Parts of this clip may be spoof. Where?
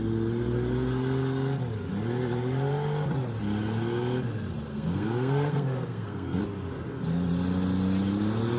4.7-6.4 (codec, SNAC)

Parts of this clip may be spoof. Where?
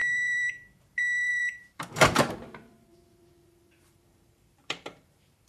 0.0-5.5 (vocoder, BigVGAN v2)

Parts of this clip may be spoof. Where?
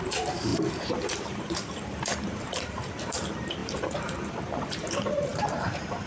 0.0-6.1 (vocoder, BigVGAN v2)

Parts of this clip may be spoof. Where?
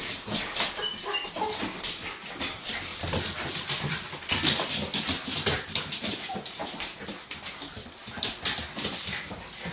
none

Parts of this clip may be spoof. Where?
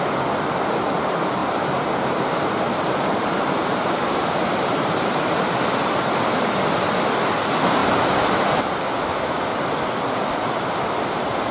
1.4-6.3 (vocoder, BigVGAN v2); 7.8-8.4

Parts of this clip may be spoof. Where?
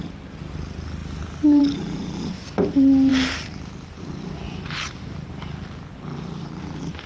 none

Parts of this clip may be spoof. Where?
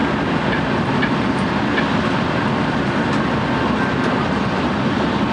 none